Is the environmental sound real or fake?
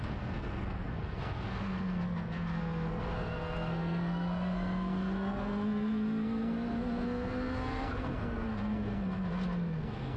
fake